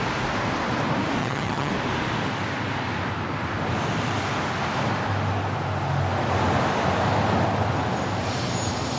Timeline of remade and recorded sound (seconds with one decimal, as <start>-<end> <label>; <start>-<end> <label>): 0.0-1.2 recorded; 1.2-1.7 remade; 1.7-9.0 recorded